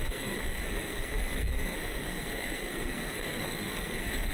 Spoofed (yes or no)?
yes